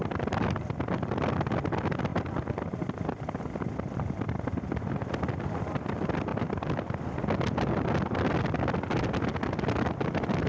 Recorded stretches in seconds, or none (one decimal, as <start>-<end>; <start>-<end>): 0.0-10.5